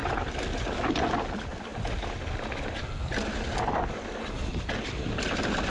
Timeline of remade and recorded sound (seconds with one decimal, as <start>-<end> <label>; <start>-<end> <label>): 0.0-5.7 recorded